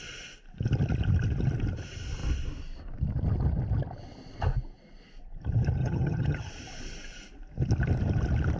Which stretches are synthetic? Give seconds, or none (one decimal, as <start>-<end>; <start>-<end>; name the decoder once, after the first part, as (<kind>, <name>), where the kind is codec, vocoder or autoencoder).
5.8-6.5 (vocoder, HiFi-GAN)